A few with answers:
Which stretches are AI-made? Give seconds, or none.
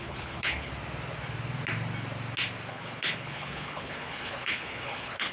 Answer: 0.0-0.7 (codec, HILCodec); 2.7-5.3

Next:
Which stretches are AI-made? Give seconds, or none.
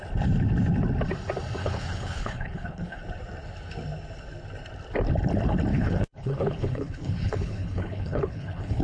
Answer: 1.6-3.0 (codec, HILCodec); 5.7-8.8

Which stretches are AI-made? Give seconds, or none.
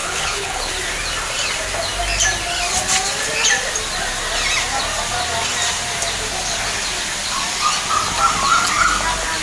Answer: 0.0-0.7 (codec, HILCodec)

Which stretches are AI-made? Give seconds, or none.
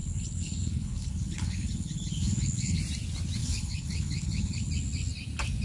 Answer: 0.0-2.8 (codec, HILCodec); 3.4-4.7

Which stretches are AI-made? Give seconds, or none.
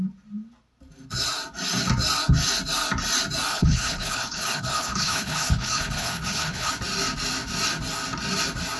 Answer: 3.5-6.7 (codec, HILCodec)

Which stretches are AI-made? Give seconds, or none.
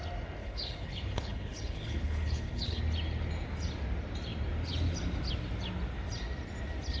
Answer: 0.4-2.8 (codec, HILCodec)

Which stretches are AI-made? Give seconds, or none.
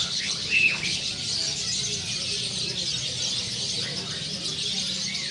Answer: 0.0-1.1 (codec, HILCodec)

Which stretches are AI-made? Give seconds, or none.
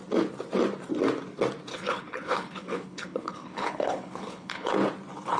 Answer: 1.7-4.7 (codec, HILCodec)